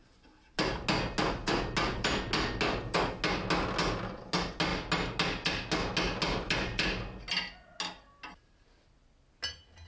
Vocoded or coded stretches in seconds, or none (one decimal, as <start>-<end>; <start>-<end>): none